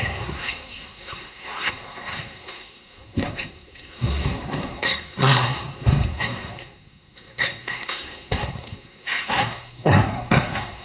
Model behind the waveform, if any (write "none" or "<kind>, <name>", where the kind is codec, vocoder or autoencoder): codec, SNAC